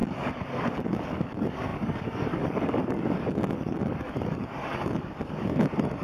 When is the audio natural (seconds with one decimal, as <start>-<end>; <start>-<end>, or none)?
none